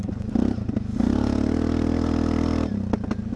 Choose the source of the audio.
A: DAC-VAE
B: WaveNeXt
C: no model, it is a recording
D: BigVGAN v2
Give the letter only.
C